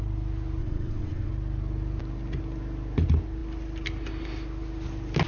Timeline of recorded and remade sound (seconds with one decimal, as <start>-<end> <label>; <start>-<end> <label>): 0.0-0.6 recorded; 0.6-1.3 remade; 1.3-5.3 recorded